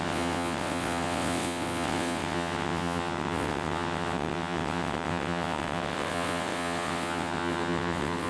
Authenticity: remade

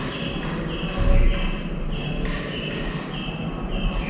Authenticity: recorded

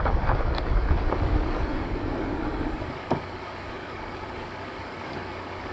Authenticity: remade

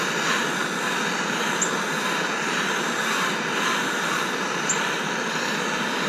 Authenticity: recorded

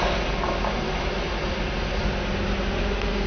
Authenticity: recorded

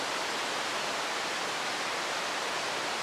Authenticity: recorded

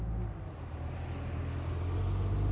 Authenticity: recorded